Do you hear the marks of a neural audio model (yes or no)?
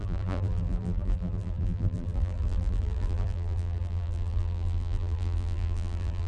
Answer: yes